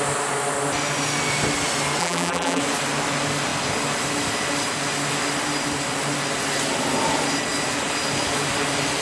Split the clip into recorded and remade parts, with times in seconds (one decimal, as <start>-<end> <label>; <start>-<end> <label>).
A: 0.0-2.0 recorded; 2.0-2.6 remade; 2.6-9.0 recorded